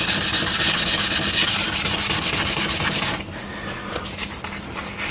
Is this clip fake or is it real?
real